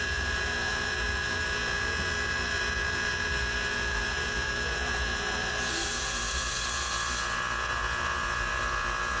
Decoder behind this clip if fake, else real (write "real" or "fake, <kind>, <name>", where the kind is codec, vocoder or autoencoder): fake, vocoder, Vocos